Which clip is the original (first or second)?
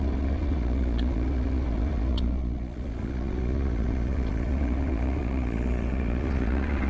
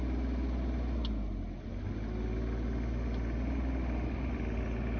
second